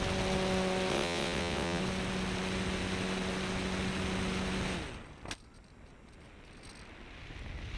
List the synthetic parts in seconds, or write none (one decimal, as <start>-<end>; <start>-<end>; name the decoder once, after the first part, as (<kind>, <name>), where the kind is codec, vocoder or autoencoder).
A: 0.9-1.8 (vocoder, WaveNeXt)